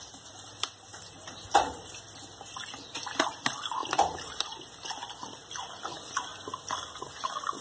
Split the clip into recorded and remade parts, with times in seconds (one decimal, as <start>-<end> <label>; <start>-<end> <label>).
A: 0.0-0.9 recorded; 0.9-2.0 remade; 2.0-3.8 recorded; 3.8-4.7 remade; 4.7-7.6 recorded